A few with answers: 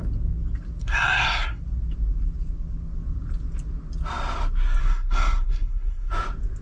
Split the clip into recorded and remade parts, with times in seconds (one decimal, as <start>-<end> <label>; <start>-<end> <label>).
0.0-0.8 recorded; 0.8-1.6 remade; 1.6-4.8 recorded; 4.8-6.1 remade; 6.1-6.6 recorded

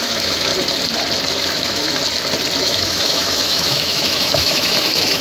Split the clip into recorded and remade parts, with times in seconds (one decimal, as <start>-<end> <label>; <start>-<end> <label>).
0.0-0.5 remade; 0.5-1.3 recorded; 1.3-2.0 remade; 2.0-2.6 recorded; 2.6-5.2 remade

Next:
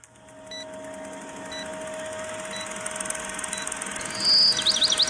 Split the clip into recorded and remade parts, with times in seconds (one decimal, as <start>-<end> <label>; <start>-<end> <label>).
0.0-5.1 recorded

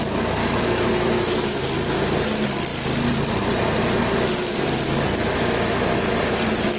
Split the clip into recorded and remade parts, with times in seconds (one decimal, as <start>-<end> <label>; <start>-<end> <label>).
0.0-0.4 recorded; 0.4-1.6 remade; 1.6-6.8 recorded

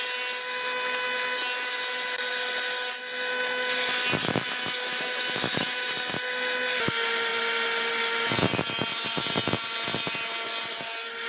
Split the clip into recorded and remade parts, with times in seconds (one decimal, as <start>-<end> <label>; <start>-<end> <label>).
0.0-4.2 recorded; 4.2-5.9 remade; 5.9-11.3 recorded

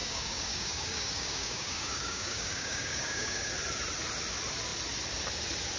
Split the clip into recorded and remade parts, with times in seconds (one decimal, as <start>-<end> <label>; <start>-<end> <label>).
0.0-3.5 remade; 3.5-5.8 recorded